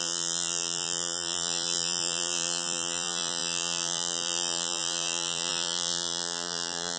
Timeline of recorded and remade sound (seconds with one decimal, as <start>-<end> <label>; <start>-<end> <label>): 0.0-7.0 remade

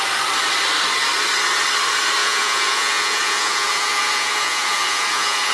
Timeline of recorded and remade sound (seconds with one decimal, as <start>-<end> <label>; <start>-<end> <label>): 0.0-2.2 recorded; 2.2-5.5 remade

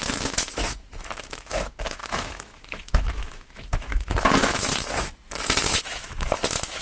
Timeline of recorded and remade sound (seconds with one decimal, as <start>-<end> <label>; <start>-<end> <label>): 0.0-6.8 remade